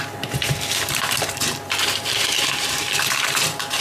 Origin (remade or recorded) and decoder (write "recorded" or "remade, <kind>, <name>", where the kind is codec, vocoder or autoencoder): remade, vocoder, BigVGAN v2